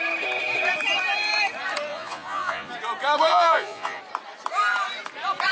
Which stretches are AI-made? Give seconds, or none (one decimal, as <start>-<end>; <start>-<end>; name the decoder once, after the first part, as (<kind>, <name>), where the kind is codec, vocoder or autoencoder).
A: 1.9-2.7 (vocoder, Vocos); 3.3-4.0